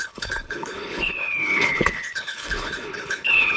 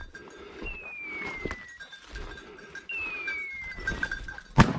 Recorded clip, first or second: second